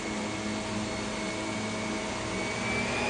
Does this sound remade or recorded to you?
recorded